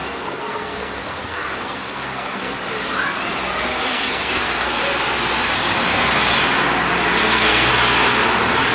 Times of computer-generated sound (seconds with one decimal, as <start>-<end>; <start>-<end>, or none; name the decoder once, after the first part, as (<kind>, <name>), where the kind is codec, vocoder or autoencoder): 0.0-2.5 (codec, SNAC); 3.7-4.8; 7.2-7.7